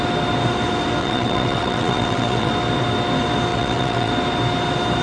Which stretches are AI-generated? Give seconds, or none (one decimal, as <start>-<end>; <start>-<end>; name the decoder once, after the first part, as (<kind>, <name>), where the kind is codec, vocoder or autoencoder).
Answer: 1.0-2.5 (vocoder, WaveNeXt); 3.5-4.1